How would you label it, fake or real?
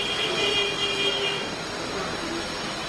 real